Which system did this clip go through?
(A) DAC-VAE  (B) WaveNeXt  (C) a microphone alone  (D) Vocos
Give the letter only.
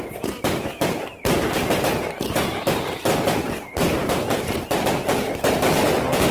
C